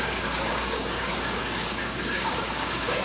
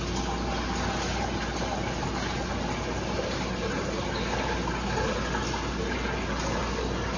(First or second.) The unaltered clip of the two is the second